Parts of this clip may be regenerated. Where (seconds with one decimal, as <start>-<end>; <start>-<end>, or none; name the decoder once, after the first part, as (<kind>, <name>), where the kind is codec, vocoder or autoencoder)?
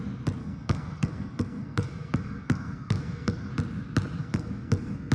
0.4-3.5 (codec, SNAC); 4.2-5.1